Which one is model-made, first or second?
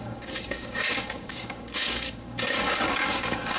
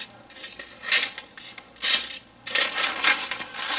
first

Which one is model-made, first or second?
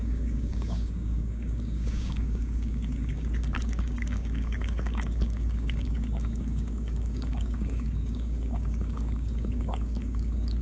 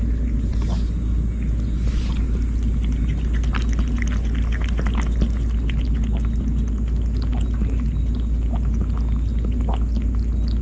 first